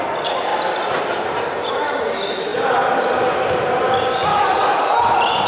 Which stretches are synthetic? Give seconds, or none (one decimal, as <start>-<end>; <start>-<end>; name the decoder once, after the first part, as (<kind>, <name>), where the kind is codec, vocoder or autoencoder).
4.3-5.0 (codec, DAC)